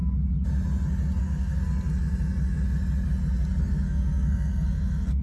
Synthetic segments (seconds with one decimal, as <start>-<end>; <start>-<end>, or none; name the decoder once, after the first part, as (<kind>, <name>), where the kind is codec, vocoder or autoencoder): 1.2-1.6 (codec, SNAC); 3.6-5.2